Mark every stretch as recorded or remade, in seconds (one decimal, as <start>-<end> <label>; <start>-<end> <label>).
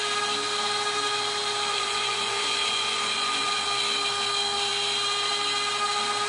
0.0-1.7 recorded; 1.7-3.6 remade; 3.6-6.3 recorded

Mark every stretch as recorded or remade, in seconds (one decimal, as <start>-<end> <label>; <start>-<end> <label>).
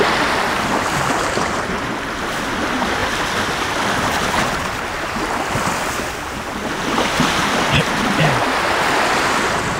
0.0-9.8 recorded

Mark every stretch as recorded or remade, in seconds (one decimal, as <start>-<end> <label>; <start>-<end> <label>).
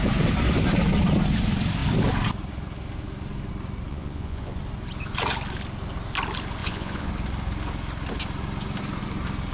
0.0-3.9 recorded; 3.9-4.6 remade; 4.6-6.6 recorded; 6.6-7.1 remade; 7.1-9.5 recorded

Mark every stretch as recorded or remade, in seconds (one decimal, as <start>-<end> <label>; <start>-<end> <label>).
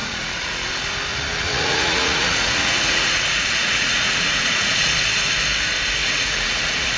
0.0-0.7 remade; 0.7-1.1 recorded; 1.1-4.9 remade; 4.9-6.0 recorded; 6.0-7.0 remade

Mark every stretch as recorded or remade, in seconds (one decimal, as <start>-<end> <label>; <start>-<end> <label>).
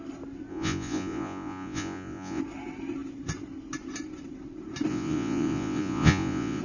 0.0-0.5 recorded; 0.5-2.4 remade; 2.4-4.9 recorded; 4.9-6.6 remade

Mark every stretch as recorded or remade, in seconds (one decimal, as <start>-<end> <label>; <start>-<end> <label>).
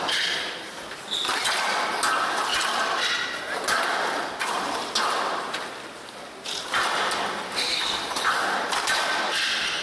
0.0-9.8 recorded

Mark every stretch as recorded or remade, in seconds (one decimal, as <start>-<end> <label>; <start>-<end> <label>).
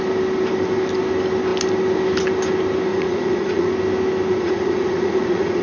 0.0-2.9 recorded; 2.9-3.7 remade; 3.7-4.3 recorded; 4.3-5.6 remade